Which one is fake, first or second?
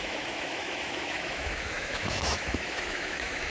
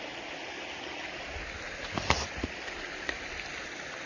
first